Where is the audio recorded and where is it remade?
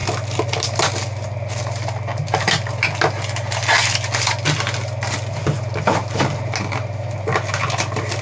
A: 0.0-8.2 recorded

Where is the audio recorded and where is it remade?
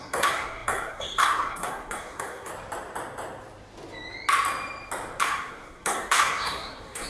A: 0.0-2.5 remade; 2.5-5.2 recorded; 5.2-7.1 remade